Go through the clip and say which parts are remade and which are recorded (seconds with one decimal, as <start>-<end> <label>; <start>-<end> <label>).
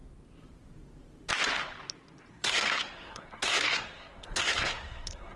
0.0-2.3 recorded; 2.3-5.4 remade